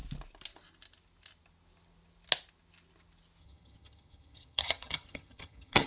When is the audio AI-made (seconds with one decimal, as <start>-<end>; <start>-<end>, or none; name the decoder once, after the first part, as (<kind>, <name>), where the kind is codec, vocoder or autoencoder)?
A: 3.4-5.9 (vocoder, HiFi-GAN)